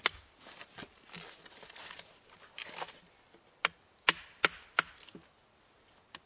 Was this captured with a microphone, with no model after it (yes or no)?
yes